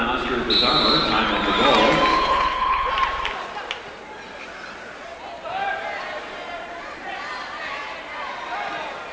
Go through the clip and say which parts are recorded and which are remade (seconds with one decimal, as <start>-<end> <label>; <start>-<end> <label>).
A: 0.0-2.1 recorded; 2.1-2.9 remade; 2.9-9.1 recorded